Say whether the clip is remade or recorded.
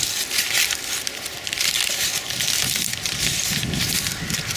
recorded